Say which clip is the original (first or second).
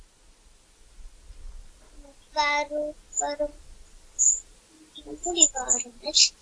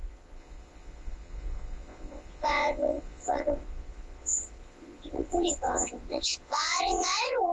first